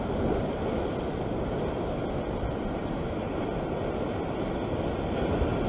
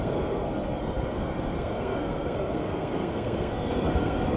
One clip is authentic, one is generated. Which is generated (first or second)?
second